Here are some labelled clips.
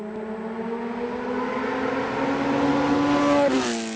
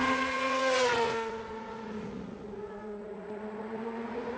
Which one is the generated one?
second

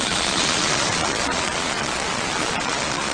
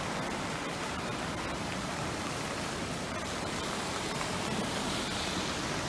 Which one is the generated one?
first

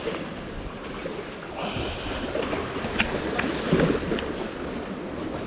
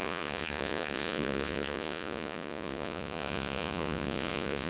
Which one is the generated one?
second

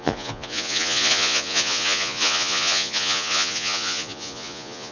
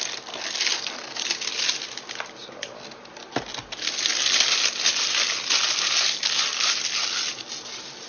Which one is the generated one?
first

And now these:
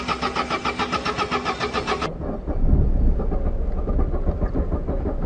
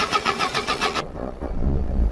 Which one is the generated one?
second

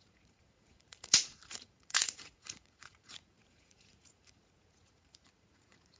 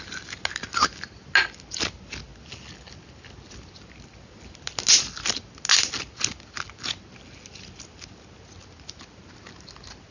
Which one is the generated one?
first